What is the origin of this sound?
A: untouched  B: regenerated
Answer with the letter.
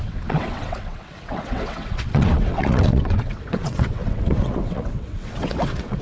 B